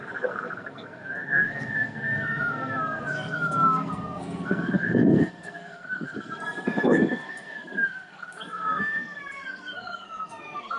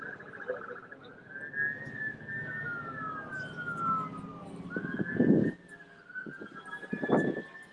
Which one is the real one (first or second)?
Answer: second